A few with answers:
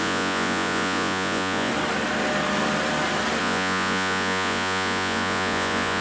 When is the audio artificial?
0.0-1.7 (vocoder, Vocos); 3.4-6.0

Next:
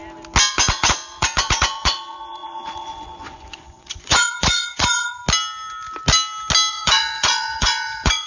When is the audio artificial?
0.5-5.2 (vocoder, Vocos); 6.7-8.3

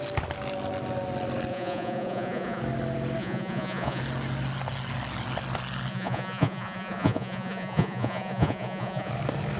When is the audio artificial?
1.5-2.6 (vocoder, Vocos); 3.2-4.0; 5.9-9.1

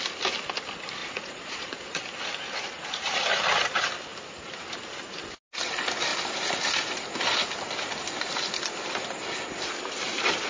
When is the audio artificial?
1.0-2.0 (vocoder, Vocos)

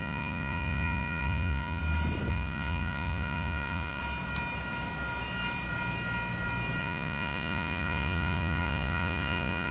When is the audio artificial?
0.0-1.8 (vocoder, Vocos); 2.3-4.0; 6.8-9.7